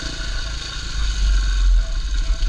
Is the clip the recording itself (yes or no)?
yes